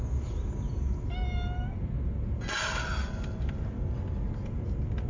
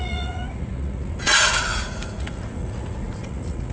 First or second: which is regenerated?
second